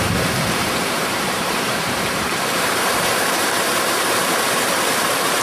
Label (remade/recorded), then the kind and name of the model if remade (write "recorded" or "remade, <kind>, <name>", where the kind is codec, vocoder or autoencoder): remade, vocoder, BigVGAN v2